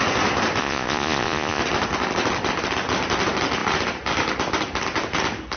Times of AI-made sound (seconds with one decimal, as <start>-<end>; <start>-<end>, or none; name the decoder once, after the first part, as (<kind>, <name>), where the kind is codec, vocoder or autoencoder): 0.6-1.6 (vocoder, Vocos)